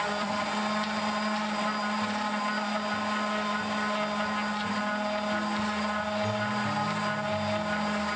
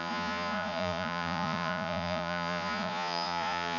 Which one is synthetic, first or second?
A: second